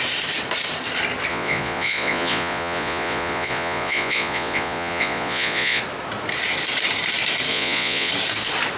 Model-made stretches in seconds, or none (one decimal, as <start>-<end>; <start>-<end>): 1.3-5.8; 7.5-8.1